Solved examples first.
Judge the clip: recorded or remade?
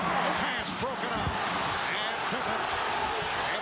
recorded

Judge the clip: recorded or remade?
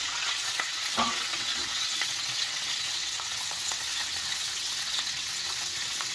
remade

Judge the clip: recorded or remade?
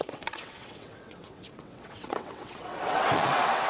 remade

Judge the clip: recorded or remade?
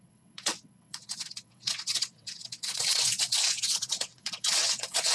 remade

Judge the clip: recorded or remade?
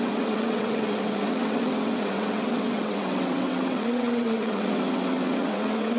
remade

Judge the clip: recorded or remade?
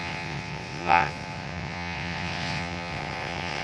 remade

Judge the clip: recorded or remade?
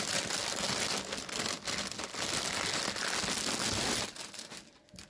recorded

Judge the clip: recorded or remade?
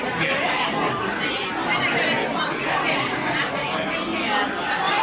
recorded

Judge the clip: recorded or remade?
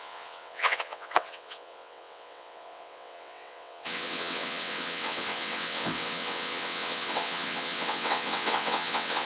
remade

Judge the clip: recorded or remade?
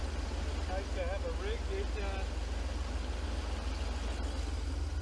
recorded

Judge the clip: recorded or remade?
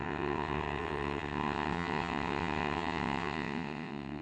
remade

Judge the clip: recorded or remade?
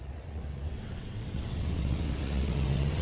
remade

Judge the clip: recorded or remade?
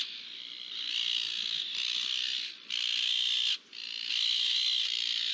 recorded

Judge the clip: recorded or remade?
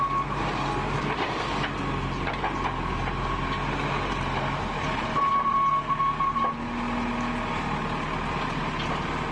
recorded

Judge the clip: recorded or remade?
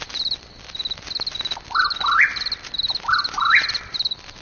recorded